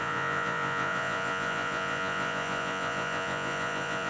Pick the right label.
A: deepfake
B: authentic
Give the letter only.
A